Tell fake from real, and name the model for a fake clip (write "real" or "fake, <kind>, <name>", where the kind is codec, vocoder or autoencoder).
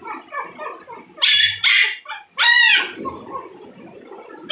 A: fake, vocoder, BigVGAN v2